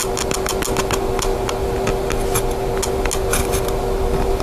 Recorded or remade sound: recorded